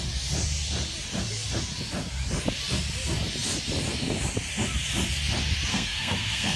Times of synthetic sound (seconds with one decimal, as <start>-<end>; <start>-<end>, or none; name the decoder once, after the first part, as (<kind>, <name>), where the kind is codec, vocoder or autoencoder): 5.7-6.6 (codec, SNAC)

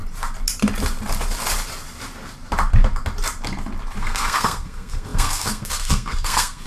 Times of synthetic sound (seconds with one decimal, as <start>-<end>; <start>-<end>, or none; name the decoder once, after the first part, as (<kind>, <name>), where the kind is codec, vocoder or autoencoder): 4.0-6.7 (codec, SNAC)

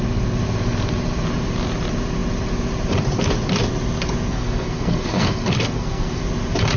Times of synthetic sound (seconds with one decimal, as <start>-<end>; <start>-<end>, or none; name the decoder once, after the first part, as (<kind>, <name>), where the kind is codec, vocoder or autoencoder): 4.3-6.2 (codec, SNAC)

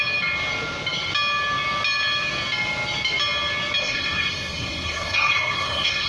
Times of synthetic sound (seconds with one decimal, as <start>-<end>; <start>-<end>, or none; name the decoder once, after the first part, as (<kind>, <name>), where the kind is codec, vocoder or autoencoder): 3.8-6.1 (codec, SNAC)

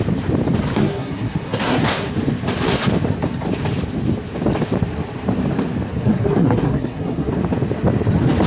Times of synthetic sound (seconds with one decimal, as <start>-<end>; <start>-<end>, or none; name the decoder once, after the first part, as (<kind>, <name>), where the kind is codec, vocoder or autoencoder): 0.7-2.1 (codec, SNAC); 5.9-7.3

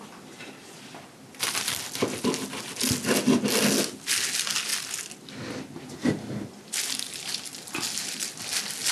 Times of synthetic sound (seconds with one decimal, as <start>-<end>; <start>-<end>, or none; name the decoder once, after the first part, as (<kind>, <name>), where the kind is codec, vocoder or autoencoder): none